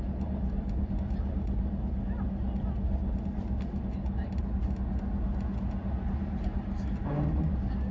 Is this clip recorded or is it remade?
recorded